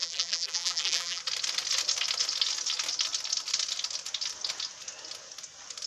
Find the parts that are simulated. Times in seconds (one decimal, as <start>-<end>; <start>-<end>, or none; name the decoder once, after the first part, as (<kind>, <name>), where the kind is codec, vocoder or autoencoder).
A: 0.0-1.2 (vocoder, BigVGAN v2)